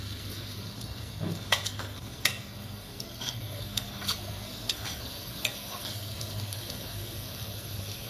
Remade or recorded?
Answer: remade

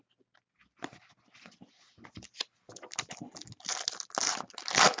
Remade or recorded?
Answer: recorded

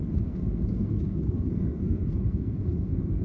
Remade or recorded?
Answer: remade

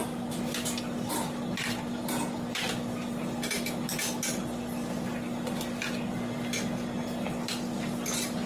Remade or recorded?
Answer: recorded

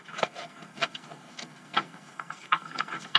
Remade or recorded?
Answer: remade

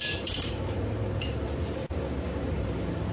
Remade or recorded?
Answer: remade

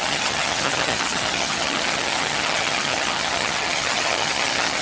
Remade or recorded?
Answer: remade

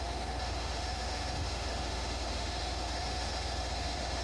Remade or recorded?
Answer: remade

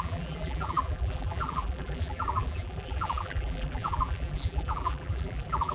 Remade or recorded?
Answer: remade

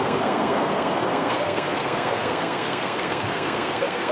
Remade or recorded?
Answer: remade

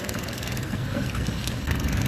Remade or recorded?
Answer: remade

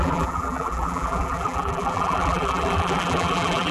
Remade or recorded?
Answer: remade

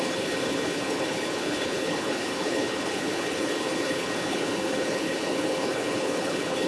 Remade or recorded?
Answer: remade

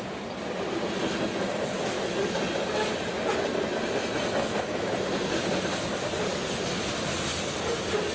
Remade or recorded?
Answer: recorded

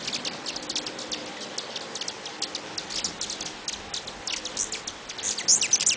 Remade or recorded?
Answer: recorded